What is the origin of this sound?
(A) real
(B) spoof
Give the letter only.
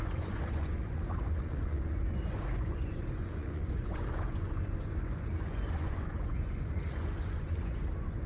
B